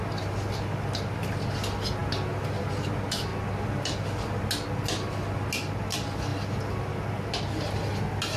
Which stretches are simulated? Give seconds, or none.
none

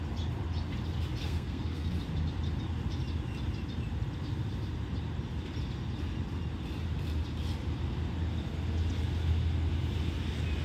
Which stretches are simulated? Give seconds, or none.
1.2-1.9 (codec, SNAC)

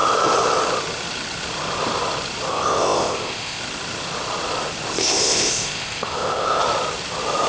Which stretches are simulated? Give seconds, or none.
2.5-3.6 (codec, ZipCodec); 5.0-6.6

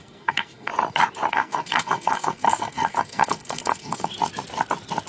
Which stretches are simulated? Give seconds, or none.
0.0-0.7 (codec, SNAC); 1.3-4.1

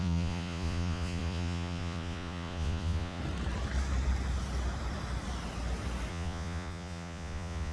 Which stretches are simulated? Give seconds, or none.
0.0-3.2 (vocoder, Vocos); 6.1-7.7

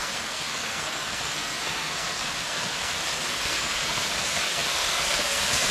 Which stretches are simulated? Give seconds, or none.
0.0-5.7 (codec, SNAC)

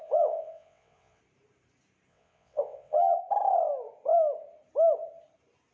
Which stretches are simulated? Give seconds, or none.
0.0-1.2 (vocoder, WaveNeXt); 2.1-3.2

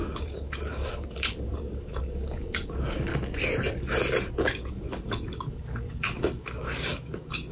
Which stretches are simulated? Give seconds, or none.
0.0-3.1 (codec, DAC); 4.7-7.5